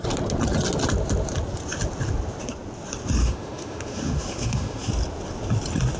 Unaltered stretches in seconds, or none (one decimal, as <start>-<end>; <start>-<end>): 0.0-3.2; 4.9-6.0